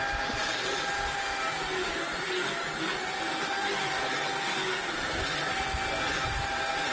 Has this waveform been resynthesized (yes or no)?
no